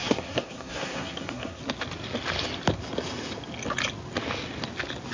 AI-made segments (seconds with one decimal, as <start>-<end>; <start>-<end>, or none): 0.0-1.6